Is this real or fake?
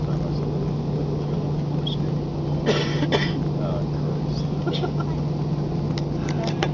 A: real